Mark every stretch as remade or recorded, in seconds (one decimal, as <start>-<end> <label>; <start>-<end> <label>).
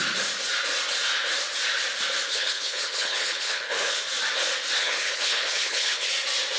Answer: 0.0-2.3 recorded; 2.3-4.0 remade; 4.0-4.8 recorded; 4.8-6.1 remade; 6.1-6.6 recorded